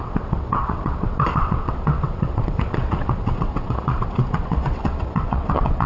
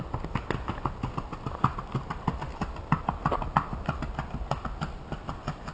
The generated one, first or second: first